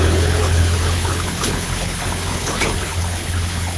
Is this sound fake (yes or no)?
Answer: yes